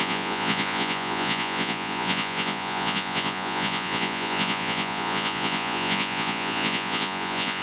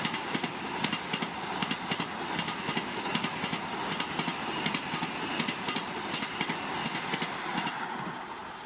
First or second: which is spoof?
first